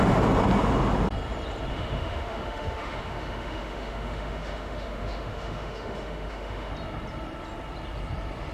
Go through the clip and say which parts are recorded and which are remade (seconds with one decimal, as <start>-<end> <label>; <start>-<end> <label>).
0.0-1.7 recorded; 1.7-6.7 remade; 6.7-8.5 recorded